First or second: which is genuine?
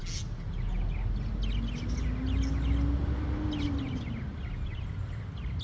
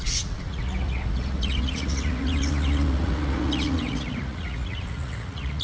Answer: first